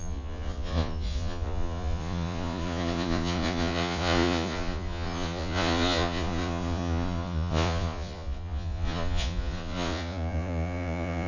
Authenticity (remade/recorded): remade